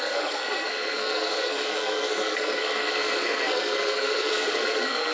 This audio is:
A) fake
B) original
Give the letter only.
A